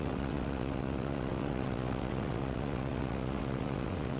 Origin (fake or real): fake